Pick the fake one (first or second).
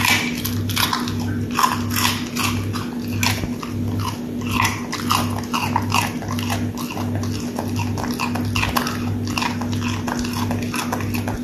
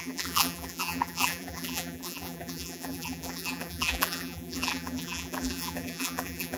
second